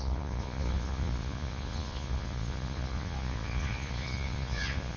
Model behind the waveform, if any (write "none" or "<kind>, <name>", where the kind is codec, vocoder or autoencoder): vocoder, Vocos